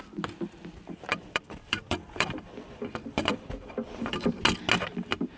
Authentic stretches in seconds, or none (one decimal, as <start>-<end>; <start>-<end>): 0.0-1.1; 4.3-5.4

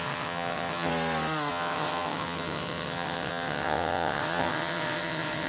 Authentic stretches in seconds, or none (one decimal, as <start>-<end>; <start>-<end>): 0.9-1.5

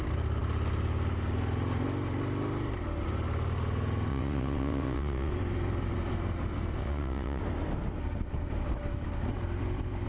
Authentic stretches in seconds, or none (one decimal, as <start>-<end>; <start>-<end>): 0.0-4.1; 5.3-6.8; 7.4-10.1